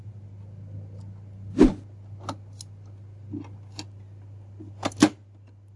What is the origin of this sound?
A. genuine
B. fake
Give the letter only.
A